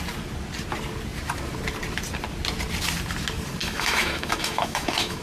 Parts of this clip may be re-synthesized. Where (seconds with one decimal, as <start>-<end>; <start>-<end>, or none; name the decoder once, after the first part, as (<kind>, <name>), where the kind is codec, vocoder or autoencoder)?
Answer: 3.6-5.2 (autoencoder, DAC-VAE)

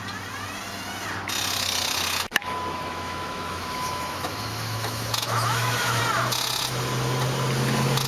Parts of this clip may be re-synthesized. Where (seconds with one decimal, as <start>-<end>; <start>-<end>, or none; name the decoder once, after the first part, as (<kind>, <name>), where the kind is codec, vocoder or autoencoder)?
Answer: 2.3-6.0 (autoencoder, DAC-VAE)

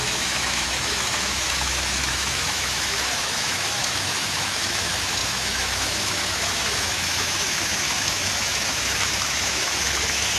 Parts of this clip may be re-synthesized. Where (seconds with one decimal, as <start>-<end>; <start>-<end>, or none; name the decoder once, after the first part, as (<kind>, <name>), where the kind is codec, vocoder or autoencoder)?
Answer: 0.0-10.4 (autoencoder, DAC-VAE)

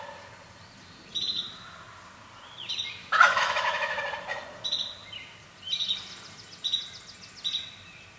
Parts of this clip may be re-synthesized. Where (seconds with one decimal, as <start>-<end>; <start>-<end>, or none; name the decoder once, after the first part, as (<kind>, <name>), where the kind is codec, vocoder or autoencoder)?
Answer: 3.0-4.0 (autoencoder, DAC-VAE)